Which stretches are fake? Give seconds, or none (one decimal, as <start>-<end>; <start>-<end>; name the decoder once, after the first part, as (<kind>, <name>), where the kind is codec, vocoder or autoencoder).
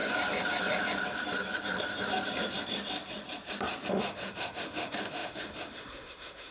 3.9-6.5 (autoencoder, DAC-VAE)